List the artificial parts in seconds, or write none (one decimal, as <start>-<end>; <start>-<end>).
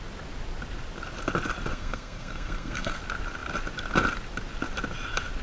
1.7-3.0